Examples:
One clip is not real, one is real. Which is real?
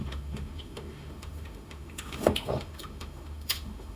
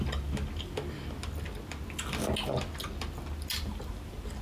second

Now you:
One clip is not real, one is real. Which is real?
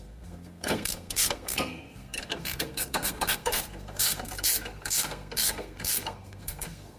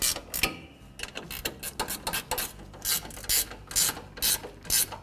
second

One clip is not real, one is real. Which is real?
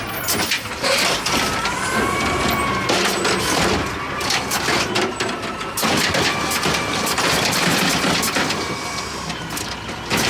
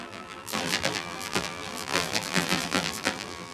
first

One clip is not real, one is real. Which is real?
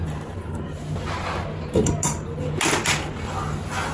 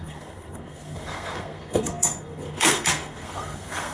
first